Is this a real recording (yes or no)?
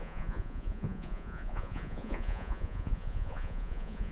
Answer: no